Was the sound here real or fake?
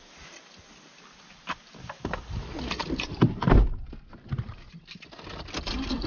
real